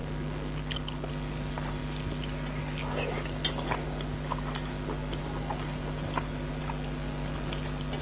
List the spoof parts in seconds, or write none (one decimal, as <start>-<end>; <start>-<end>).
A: none